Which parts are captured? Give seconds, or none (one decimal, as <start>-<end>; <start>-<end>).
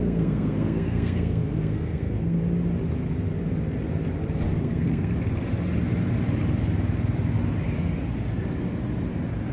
2.4-4.6; 5.1-9.5